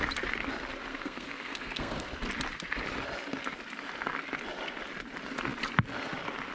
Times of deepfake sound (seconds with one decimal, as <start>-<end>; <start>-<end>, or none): 0.9-2.1